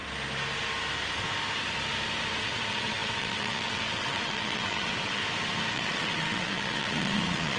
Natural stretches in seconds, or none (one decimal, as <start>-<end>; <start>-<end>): 0.0-2.4; 5.2-5.7

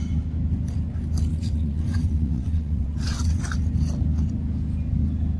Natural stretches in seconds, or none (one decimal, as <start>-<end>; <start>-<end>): 0.0-1.3; 3.4-5.4

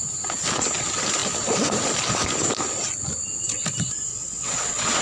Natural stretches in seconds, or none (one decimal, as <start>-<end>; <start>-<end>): 0.0-4.1

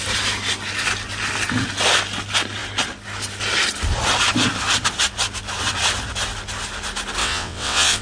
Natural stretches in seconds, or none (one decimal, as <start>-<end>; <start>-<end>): 0.0-7.2